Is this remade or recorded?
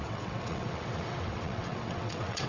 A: remade